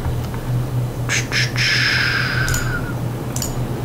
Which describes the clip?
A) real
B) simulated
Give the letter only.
A